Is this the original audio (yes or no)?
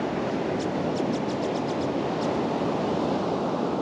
yes